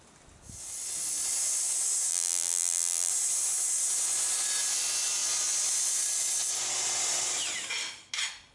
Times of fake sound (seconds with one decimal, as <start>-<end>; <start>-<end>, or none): 2.1-3.1

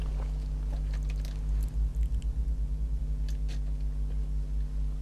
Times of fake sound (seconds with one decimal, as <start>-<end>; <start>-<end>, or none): 1.9-3.0